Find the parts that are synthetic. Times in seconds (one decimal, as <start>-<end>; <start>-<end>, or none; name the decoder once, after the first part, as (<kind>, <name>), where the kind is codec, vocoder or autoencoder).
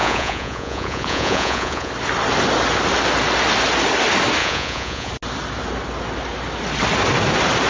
0.0-1.9 (vocoder, Vocos); 4.4-5.1